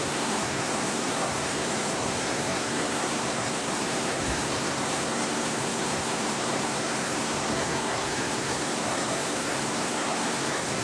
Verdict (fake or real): fake